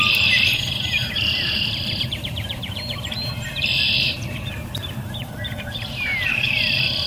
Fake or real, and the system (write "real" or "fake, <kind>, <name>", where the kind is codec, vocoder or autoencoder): fake, vocoder, BigVGAN v2